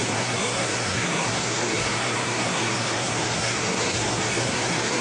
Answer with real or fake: fake